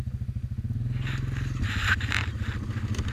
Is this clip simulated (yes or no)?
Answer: no